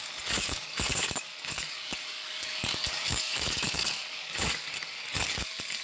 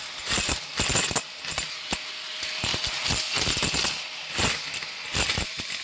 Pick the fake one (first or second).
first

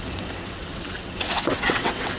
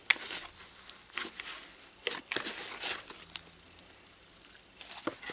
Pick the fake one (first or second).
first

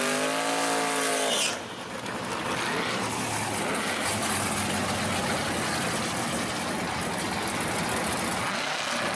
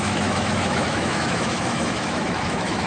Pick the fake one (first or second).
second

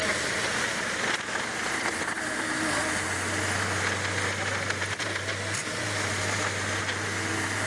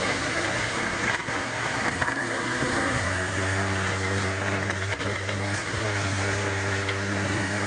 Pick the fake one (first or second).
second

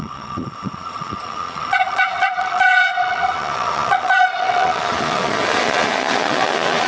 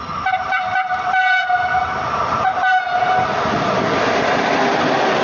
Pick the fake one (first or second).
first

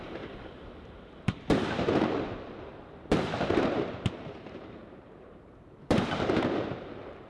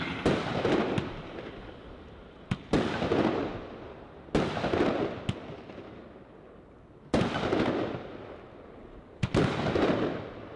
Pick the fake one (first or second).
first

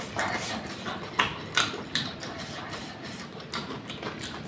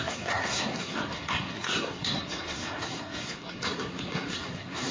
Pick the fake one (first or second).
second